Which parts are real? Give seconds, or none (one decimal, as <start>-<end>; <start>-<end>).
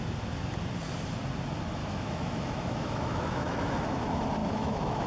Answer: 0.0-1.8; 4.0-4.4